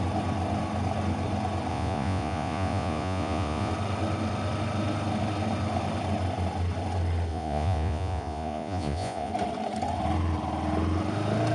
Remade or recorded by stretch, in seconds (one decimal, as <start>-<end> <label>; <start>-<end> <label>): 0.0-1.7 recorded; 1.7-3.7 remade; 3.7-7.3 recorded; 7.3-9.3 remade; 9.3-11.5 recorded